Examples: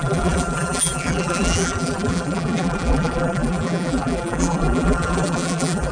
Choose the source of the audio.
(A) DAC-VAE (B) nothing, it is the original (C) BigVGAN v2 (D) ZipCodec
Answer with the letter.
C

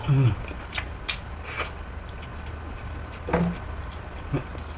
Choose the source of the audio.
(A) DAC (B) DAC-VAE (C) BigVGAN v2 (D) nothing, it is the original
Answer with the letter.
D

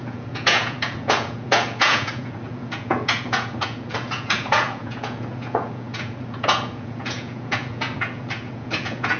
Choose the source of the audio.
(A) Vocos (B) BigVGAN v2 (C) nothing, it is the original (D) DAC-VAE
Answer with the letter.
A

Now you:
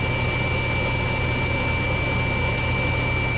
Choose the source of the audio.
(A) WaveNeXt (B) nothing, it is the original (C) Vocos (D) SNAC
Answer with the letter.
B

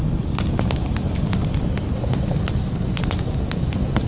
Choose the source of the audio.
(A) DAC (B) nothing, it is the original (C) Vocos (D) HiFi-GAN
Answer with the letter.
B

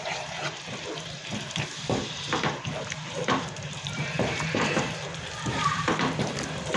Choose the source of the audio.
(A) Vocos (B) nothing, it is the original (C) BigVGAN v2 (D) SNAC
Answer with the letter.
C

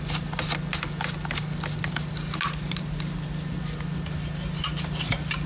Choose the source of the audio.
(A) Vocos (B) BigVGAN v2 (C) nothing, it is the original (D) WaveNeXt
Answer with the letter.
C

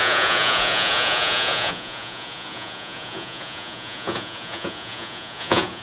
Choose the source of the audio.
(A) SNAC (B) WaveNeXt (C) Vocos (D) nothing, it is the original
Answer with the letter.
C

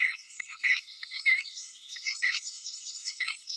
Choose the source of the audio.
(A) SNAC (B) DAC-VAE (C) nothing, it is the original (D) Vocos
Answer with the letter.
A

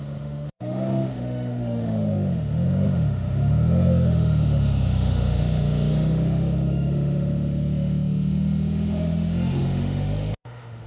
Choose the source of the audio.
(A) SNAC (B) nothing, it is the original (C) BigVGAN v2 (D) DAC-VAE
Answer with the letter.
D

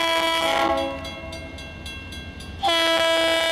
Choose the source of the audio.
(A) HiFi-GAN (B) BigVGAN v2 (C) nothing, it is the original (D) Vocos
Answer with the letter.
C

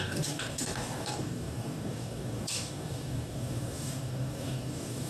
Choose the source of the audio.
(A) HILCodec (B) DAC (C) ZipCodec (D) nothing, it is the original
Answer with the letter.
B